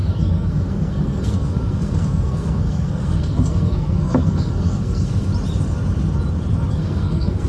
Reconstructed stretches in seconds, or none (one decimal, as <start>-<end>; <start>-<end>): 0.0-5.3; 6.7-7.5